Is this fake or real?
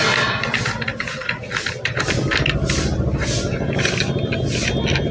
real